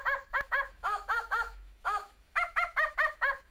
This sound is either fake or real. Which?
fake